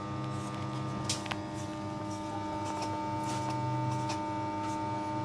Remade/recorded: recorded